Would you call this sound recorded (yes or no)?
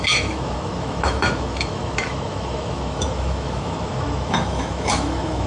no